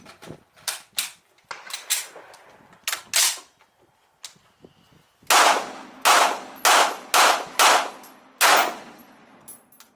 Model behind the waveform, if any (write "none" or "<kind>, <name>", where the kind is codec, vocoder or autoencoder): none